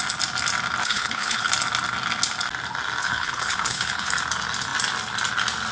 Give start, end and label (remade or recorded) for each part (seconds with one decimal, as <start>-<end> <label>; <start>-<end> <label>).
0.0-0.8 recorded; 0.8-1.5 remade; 1.5-3.0 recorded; 3.0-4.1 remade; 4.1-5.7 recorded